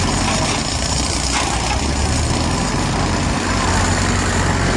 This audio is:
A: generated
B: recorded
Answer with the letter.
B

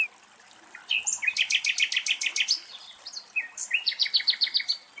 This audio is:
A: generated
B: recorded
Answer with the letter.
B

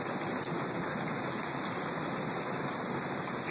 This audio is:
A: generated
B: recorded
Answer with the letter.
B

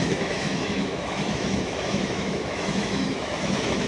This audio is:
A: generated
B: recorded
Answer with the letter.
A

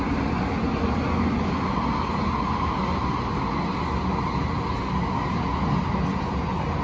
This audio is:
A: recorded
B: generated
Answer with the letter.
A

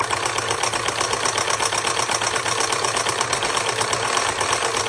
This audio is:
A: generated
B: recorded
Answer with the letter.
B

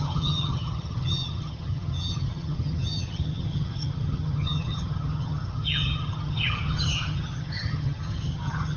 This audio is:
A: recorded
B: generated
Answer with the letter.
B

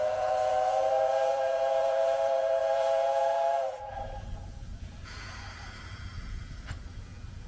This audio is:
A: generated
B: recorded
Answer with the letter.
A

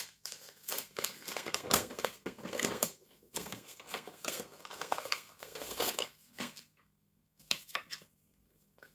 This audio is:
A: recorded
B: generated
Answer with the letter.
B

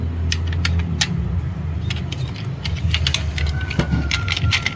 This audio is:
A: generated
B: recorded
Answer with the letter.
B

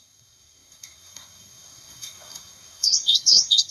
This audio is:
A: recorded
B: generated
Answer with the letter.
B